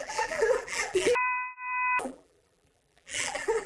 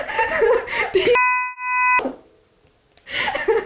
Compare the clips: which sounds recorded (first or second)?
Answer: second